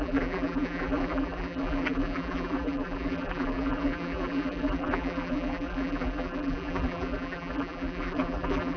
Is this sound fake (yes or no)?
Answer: yes